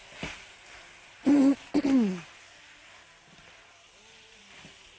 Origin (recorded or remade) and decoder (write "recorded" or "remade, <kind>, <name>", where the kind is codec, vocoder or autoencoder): recorded